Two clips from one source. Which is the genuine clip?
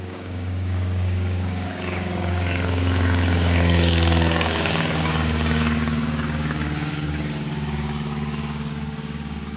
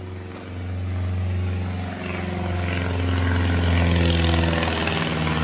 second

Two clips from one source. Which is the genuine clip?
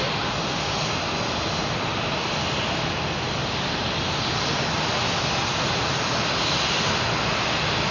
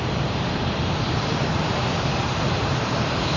first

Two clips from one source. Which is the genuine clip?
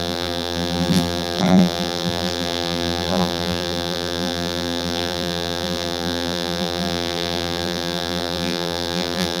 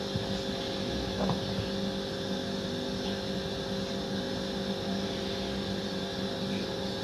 second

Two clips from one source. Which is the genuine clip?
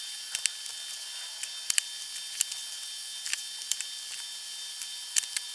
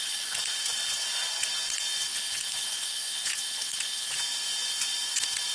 first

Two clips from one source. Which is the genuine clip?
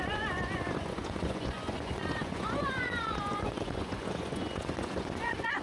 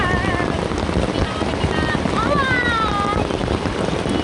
second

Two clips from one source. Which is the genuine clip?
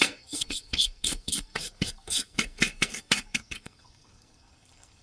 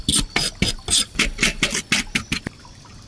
second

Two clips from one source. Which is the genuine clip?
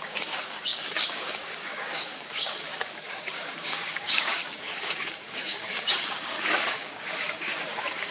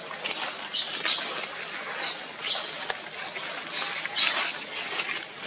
second